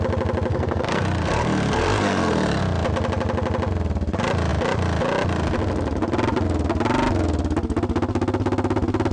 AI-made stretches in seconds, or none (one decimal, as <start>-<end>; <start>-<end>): 0.5-2.6